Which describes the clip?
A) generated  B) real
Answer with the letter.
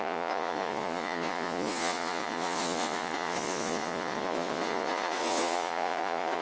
A